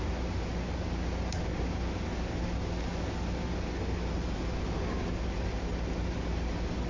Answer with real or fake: real